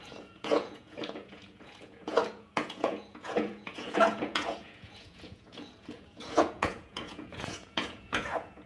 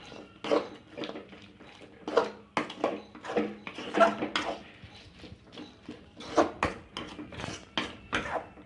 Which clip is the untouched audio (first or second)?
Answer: second